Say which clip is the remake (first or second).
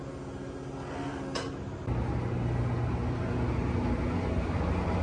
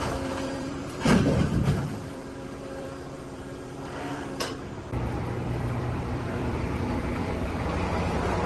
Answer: second